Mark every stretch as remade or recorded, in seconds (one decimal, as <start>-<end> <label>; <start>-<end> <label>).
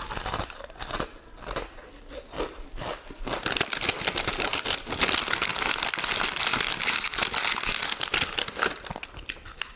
0.0-9.8 recorded